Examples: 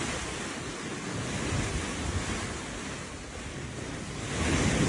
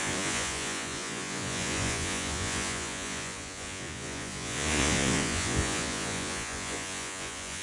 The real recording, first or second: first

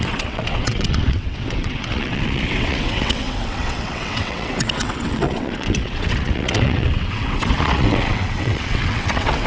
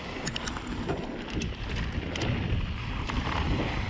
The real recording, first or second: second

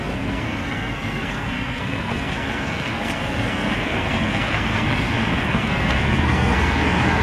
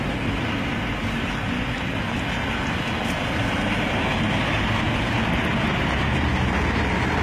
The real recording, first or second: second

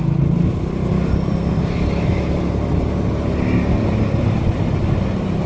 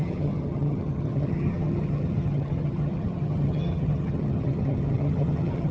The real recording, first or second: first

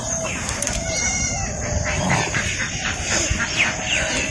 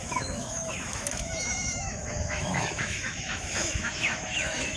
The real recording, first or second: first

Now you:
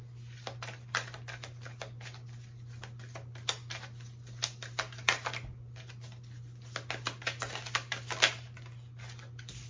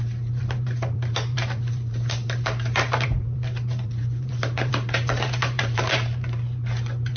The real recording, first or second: first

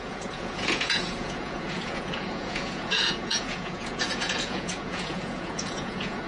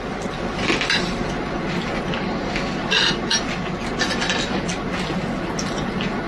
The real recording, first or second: second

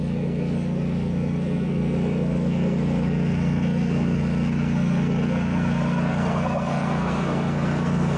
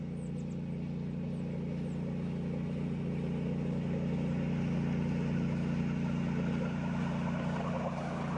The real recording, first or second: second